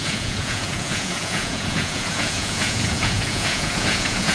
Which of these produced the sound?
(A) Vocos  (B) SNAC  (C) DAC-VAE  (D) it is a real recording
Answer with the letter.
A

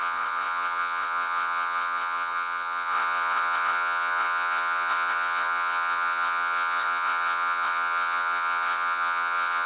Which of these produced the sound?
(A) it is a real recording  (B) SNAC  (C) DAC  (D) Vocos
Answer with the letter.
D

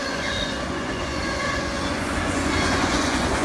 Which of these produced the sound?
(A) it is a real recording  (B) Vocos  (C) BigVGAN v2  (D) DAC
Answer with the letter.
B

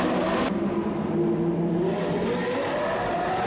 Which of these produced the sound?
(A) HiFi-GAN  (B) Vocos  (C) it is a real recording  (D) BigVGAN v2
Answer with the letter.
C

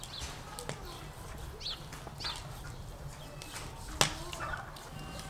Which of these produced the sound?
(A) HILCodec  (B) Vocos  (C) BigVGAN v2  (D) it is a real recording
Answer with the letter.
D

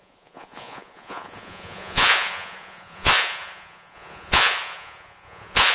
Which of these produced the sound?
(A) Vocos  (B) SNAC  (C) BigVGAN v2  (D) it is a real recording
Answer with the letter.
A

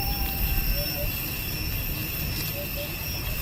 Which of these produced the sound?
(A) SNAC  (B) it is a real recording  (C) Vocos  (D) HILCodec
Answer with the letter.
B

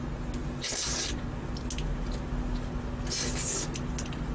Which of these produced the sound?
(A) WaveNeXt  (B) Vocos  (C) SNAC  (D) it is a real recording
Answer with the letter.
D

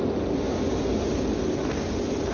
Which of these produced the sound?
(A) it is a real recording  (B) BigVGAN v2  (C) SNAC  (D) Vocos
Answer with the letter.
A